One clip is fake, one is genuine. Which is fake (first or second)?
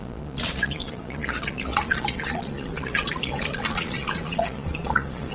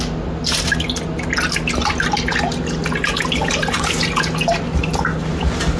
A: first